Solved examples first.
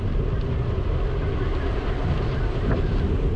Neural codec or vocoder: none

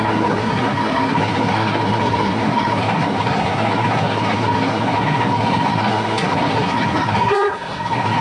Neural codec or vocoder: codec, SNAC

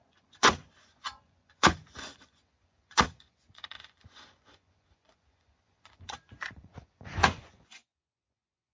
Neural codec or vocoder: vocoder, Vocos